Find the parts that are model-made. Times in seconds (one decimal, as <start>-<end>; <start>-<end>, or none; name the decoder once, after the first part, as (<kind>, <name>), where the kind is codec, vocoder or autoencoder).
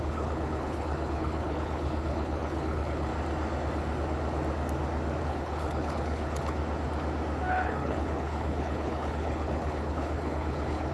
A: 0.0-3.1 (codec, HILCodec); 5.2-6.6; 7.5-10.9